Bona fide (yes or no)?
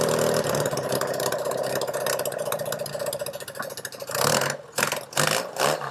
yes